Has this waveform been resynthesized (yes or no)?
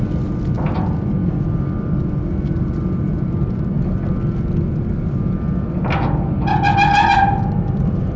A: no